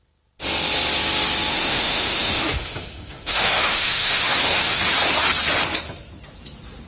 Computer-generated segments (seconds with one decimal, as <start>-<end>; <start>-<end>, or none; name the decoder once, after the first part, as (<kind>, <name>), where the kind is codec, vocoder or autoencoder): 1.5-4.8 (autoencoder, DAC-VAE)